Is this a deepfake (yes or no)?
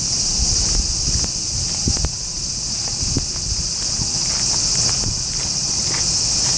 no